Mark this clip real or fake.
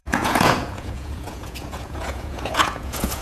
fake